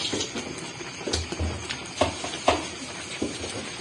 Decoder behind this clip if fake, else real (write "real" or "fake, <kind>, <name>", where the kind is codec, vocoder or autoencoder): real